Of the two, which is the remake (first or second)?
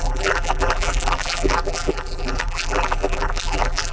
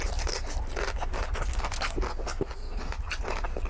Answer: first